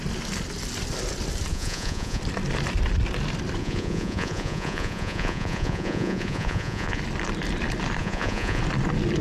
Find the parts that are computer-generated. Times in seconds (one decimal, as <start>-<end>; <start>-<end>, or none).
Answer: 1.5-2.2; 3.6-7.0; 8.0-8.6